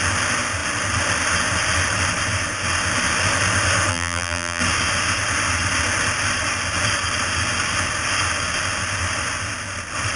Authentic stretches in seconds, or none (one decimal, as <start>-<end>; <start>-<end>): 0.0-3.9; 4.6-10.2